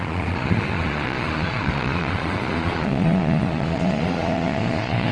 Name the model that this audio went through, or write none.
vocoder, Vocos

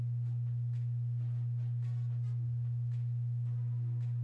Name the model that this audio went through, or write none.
none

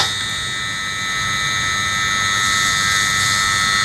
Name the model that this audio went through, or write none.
none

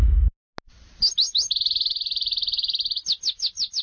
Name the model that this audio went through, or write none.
none